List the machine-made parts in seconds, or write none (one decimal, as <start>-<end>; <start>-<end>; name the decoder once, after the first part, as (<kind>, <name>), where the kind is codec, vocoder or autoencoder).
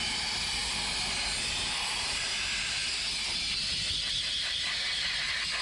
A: none